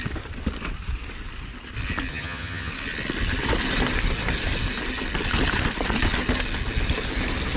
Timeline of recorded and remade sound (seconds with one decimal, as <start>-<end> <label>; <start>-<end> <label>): 0.0-2.1 recorded; 2.1-2.7 remade; 2.7-7.6 recorded